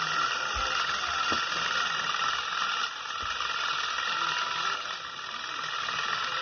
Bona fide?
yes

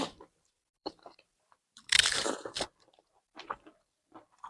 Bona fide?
no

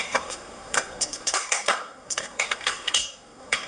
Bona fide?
no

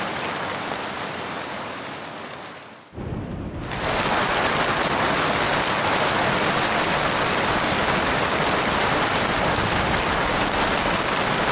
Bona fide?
yes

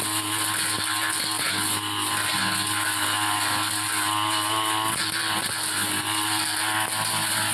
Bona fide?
yes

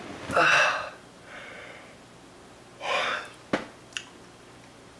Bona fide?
yes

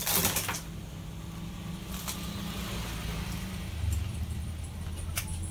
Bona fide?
yes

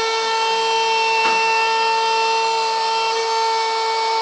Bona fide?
yes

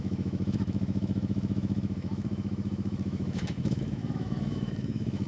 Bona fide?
no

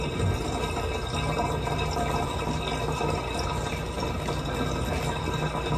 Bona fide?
yes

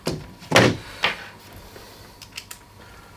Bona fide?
yes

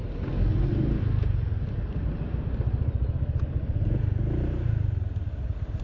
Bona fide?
yes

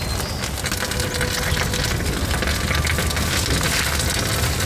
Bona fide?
yes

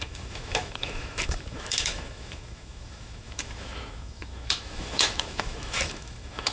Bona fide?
no